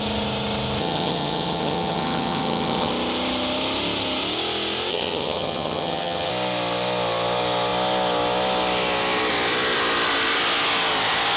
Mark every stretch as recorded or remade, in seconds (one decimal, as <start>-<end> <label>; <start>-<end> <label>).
0.0-0.8 recorded; 0.8-2.9 remade; 2.9-4.9 recorded; 4.9-6.3 remade; 6.3-11.4 recorded